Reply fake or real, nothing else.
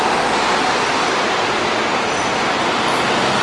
real